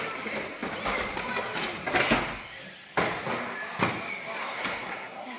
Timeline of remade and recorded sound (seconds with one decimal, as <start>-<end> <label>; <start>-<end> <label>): 0.0-4.4 recorded; 4.4-5.4 remade